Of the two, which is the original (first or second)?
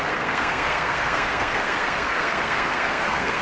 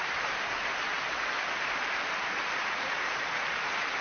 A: second